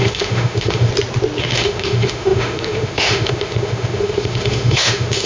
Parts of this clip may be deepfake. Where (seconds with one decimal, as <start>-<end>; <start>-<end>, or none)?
0.0-0.9; 1.4-5.3